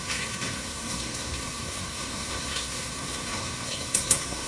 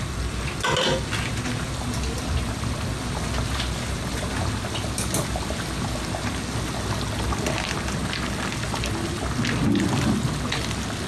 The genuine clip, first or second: second